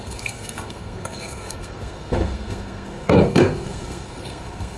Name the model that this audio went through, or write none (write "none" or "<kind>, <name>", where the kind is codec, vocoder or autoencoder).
codec, SNAC